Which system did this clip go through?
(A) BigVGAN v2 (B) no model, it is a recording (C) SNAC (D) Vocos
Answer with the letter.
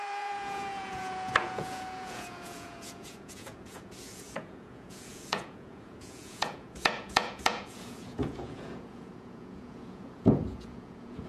D